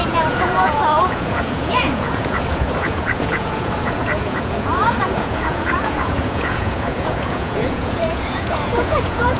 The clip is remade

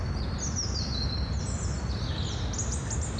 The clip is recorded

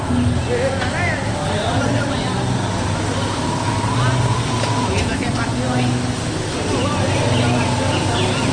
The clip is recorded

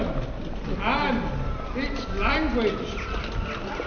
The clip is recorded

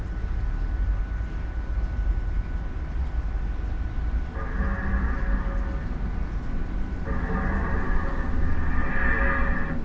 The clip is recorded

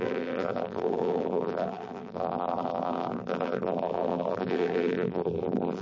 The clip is remade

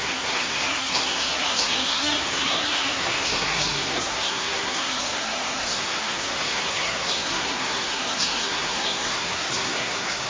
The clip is remade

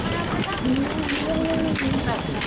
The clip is recorded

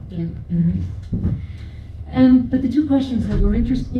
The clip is remade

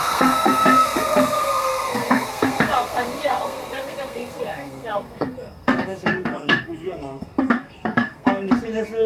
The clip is remade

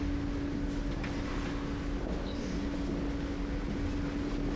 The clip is recorded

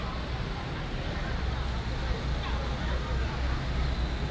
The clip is recorded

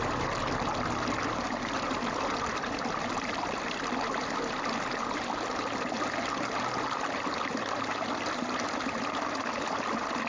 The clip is recorded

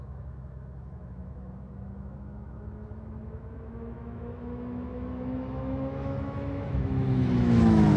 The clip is remade